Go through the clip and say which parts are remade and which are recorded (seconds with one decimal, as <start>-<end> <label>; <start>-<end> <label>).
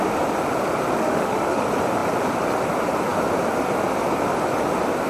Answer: 0.0-1.0 recorded; 1.0-1.6 remade; 1.6-5.1 recorded